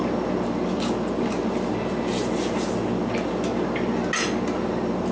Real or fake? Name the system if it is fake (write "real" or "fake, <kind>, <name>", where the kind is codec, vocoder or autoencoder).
real